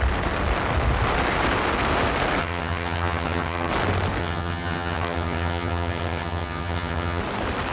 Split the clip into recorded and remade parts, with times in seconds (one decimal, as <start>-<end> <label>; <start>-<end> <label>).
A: 0.0-2.4 recorded; 2.4-3.7 remade; 3.7-4.2 recorded; 4.2-7.2 remade; 7.2-7.7 recorded